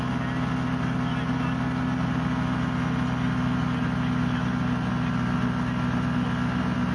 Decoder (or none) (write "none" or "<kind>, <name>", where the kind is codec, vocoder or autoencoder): none